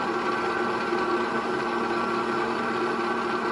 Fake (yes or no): no